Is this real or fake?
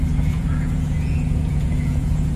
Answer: fake